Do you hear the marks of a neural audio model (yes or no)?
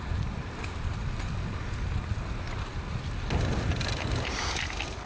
no